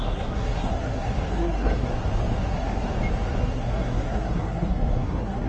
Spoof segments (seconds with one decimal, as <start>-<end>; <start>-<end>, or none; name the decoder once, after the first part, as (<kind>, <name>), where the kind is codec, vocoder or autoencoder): 0.0-1.9 (codec, SNAC); 2.5-2.9; 3.4-5.5